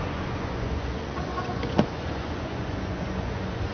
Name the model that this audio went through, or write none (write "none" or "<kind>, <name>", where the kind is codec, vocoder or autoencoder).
vocoder, Vocos